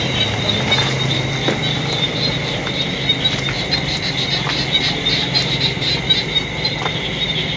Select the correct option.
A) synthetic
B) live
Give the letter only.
B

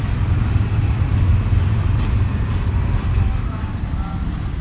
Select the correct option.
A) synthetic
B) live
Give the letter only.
B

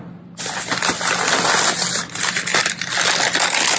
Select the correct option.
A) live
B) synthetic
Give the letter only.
A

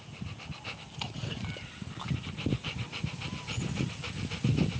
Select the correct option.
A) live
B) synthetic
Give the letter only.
A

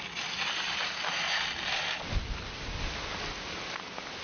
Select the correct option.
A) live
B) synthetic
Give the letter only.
A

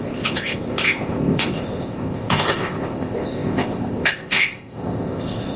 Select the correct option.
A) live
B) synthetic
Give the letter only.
B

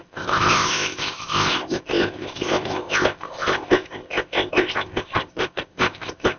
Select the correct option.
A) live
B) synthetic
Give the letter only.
B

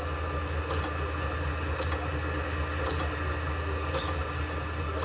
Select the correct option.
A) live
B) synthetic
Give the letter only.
A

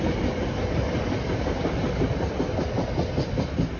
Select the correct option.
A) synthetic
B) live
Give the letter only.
B